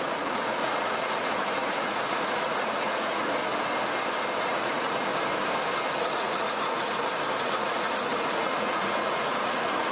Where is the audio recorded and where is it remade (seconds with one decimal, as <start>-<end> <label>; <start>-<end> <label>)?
0.0-3.4 remade; 3.4-4.4 recorded; 4.4-5.1 remade; 5.1-6.0 recorded; 6.0-9.9 remade